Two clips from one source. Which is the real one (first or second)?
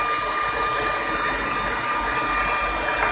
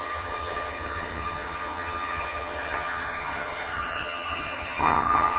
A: first